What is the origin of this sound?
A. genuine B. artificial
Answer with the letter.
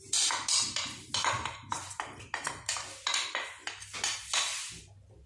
A